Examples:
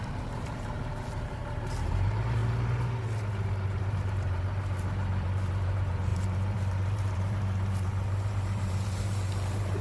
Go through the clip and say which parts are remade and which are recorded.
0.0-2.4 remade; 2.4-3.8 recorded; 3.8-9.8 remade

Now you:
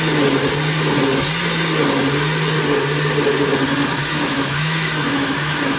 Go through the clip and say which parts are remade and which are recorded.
0.0-4.0 recorded; 4.0-5.8 remade

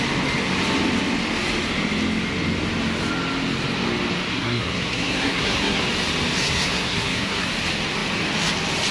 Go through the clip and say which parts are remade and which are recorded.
0.0-4.3 recorded; 4.3-5.8 remade; 5.8-6.4 recorded; 6.4-7.5 remade; 7.5-8.9 recorded